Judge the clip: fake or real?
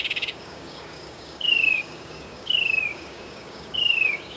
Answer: fake